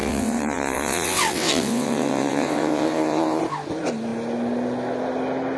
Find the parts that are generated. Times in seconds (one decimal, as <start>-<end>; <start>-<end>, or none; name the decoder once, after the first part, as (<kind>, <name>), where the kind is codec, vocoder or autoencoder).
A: 0.0-3.4 (vocoder, WaveNeXt)